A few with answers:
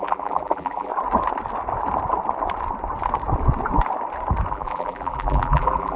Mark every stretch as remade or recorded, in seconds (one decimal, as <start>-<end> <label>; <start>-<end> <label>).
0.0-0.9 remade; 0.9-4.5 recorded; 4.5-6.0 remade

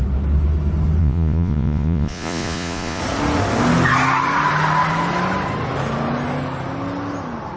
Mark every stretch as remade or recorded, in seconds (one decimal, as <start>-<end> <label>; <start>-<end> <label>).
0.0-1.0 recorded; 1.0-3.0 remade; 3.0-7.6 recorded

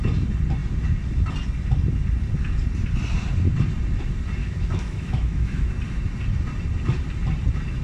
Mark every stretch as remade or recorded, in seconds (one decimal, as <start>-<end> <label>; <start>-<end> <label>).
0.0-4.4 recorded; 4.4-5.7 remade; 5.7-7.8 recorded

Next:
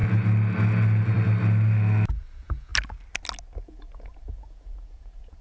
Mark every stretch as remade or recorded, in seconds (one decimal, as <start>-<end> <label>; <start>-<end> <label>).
0.0-2.1 recorded; 2.1-2.7 remade; 2.7-3.6 recorded; 3.6-5.4 remade